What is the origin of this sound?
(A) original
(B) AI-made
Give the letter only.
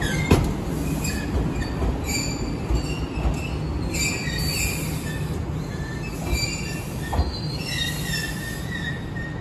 A